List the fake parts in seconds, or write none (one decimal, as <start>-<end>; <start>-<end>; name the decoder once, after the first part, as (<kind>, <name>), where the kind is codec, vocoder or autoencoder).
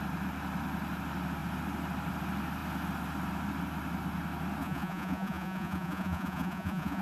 4.6-7.0 (vocoder, Vocos)